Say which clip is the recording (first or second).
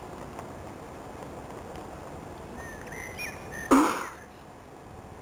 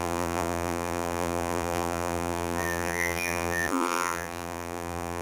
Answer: first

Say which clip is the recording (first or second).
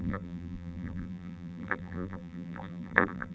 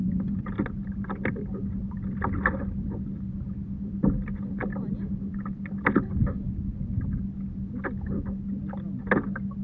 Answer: second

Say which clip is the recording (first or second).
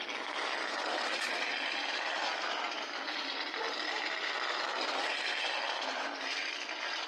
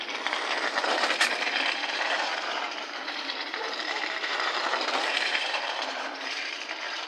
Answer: first